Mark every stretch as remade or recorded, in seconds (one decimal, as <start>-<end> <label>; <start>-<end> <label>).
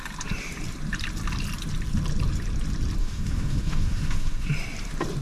0.0-3.0 recorded; 3.0-4.5 remade; 4.5-5.2 recorded